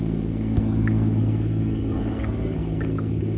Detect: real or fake fake